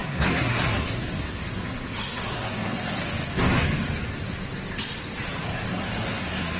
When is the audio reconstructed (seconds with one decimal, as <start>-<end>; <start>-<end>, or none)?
0.0-3.0; 5.7-6.6